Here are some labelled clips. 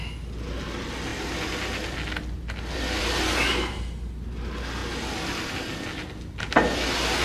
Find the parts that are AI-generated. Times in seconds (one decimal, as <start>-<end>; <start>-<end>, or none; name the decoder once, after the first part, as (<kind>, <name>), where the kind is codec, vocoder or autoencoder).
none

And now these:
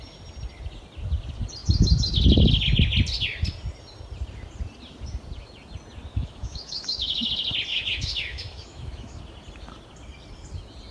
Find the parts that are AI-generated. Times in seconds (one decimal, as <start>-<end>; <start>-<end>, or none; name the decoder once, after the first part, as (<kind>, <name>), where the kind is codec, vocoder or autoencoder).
6.1-7.3 (autoencoder, DAC-VAE); 7.7-9.2

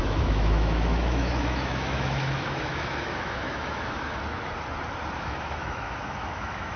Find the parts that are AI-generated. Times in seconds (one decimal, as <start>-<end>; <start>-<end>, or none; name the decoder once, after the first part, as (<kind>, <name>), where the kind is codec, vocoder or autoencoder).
0.0-4.2 (autoencoder, DAC-VAE); 5.2-6.8